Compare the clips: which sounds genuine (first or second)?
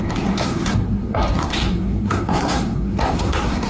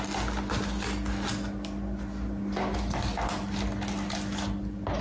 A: second